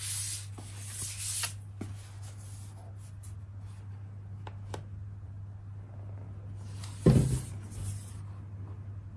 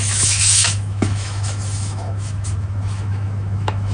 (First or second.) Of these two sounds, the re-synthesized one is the second